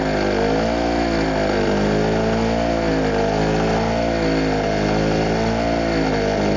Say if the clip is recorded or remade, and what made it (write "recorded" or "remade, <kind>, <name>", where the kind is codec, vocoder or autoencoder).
recorded